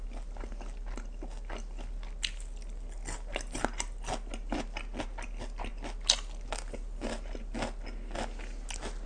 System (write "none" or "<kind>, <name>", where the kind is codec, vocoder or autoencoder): none